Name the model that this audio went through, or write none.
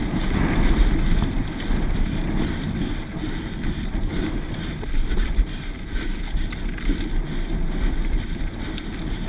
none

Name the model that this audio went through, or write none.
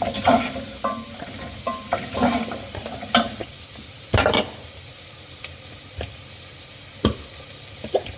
none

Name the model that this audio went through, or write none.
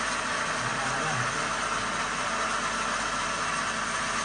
none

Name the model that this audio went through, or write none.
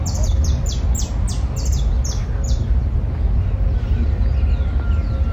none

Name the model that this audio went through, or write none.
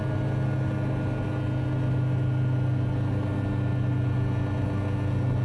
none